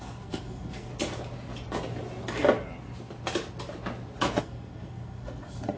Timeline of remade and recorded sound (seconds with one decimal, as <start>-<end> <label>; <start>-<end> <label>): 0.0-0.9 remade; 0.9-4.4 recorded; 4.4-5.8 remade